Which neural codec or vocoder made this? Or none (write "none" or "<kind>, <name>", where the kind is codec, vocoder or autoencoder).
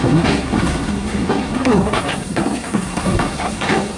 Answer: codec, SNAC